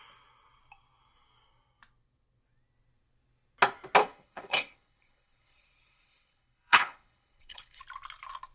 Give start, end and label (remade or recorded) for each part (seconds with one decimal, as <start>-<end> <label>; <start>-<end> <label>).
0.0-4.0 recorded; 4.0-7.8 remade; 7.8-8.5 recorded

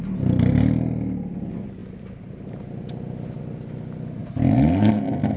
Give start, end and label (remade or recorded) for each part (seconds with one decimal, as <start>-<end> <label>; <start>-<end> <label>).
0.0-5.4 recorded